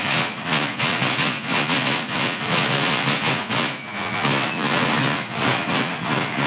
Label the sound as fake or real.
fake